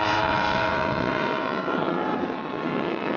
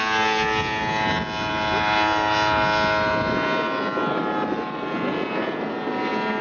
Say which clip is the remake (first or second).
first